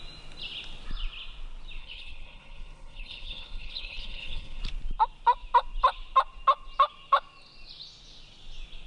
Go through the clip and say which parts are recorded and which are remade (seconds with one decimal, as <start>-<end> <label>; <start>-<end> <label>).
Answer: 0.0-1.8 recorded; 1.8-4.6 remade; 4.6-8.9 recorded